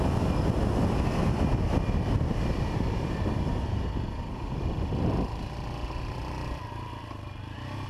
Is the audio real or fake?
real